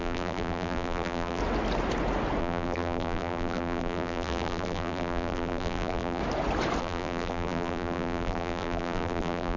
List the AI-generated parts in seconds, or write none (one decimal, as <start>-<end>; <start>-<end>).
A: 0.0-1.4; 2.4-6.2; 6.8-9.6